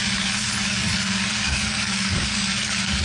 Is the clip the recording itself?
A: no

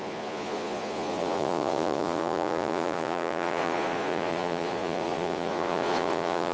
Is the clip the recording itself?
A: no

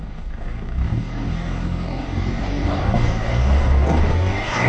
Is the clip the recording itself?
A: no